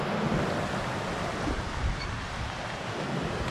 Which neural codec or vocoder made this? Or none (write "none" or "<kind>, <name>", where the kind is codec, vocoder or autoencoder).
none